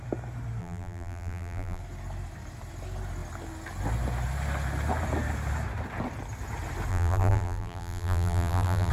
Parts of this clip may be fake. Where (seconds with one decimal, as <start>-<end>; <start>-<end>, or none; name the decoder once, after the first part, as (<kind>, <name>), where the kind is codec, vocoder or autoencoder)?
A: 0.6-1.8 (vocoder, BigVGAN v2); 6.9-8.9